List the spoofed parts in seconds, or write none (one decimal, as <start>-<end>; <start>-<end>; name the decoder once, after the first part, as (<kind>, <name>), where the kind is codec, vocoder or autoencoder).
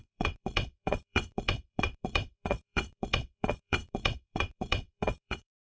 0.0-5.8 (vocoder, WaveNeXt)